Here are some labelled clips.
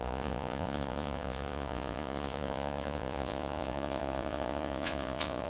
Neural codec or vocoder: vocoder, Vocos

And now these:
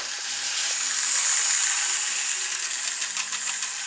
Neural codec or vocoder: none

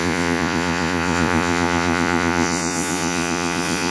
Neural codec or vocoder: vocoder, Vocos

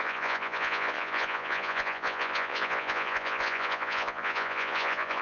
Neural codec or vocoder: vocoder, Vocos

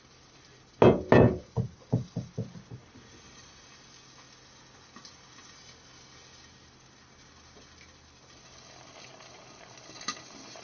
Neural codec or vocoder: none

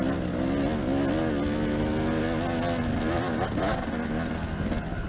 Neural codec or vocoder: none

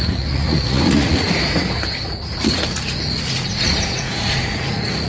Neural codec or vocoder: vocoder, Vocos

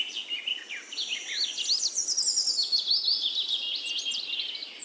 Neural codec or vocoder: none